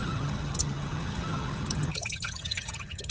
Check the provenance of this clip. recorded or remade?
remade